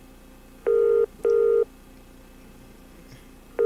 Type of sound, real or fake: real